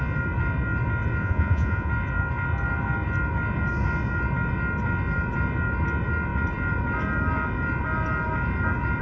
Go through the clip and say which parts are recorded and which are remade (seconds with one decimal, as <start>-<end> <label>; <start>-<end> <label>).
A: 0.0-1.2 recorded; 1.2-1.9 remade; 1.9-9.0 recorded